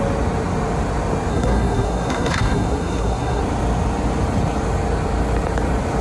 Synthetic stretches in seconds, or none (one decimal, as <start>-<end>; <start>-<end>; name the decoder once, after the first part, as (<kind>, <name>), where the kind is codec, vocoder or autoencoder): 1.3-3.4 (codec, SNAC)